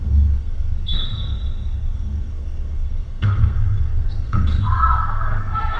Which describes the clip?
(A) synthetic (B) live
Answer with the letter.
A